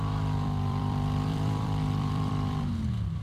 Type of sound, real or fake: fake